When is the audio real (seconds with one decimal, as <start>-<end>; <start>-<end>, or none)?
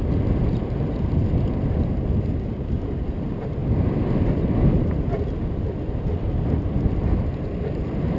0.0-8.2